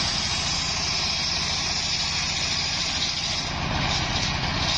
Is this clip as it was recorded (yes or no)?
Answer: yes